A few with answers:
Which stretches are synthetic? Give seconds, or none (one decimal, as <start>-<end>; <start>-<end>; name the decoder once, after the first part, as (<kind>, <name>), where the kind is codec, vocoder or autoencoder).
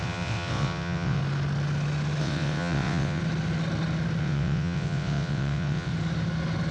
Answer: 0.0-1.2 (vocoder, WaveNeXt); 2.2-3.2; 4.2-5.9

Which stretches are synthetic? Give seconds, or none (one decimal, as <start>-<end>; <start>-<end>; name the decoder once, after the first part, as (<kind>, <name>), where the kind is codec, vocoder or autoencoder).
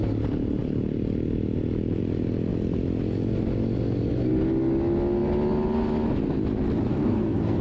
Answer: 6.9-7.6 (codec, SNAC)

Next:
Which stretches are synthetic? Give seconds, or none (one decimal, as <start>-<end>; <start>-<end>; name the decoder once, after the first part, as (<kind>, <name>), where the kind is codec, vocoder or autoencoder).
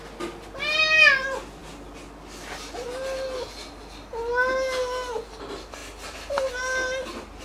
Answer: none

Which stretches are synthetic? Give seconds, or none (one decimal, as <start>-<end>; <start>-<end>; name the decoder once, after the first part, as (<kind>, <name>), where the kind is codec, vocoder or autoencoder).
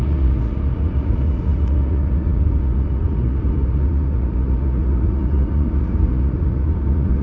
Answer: 0.0-7.2 (vocoder, Vocos)